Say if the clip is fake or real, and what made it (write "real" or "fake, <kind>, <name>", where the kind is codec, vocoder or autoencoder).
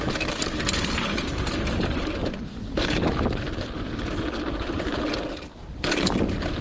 real